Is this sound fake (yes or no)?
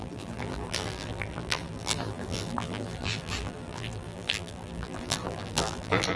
yes